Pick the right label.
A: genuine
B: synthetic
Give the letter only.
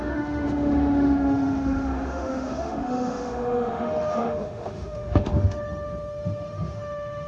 B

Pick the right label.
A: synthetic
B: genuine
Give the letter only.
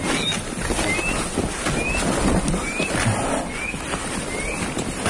B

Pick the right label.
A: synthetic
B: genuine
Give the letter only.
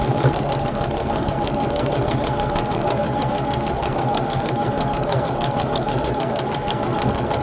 A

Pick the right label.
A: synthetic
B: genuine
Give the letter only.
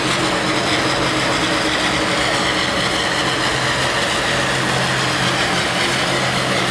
B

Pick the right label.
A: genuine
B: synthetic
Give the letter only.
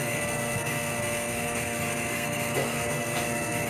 B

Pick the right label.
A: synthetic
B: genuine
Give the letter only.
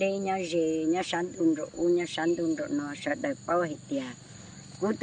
B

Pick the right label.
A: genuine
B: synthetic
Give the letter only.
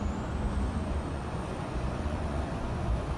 B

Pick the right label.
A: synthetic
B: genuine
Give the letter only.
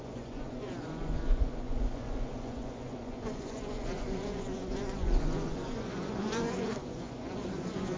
A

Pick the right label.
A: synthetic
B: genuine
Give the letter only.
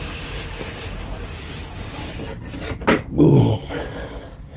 B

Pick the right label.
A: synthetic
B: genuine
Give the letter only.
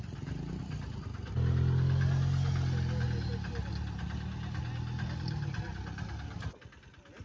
B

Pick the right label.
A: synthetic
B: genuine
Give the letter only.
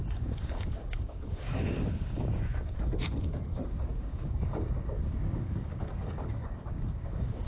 A